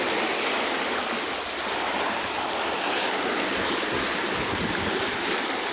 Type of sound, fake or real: real